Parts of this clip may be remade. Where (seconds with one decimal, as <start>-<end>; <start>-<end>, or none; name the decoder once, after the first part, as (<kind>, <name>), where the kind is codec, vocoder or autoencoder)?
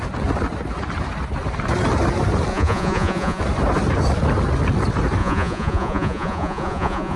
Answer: 2.5-3.4 (vocoder, Vocos); 5.2-7.2